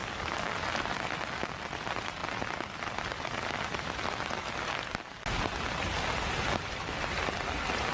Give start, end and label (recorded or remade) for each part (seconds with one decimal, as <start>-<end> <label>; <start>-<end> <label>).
0.0-0.5 remade; 0.5-7.9 recorded